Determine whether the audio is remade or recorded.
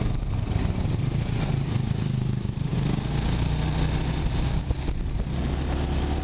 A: recorded